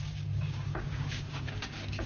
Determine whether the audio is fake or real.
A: fake